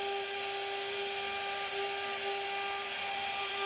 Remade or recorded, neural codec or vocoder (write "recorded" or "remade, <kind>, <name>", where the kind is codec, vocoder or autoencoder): recorded